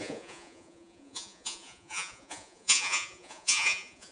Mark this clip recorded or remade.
remade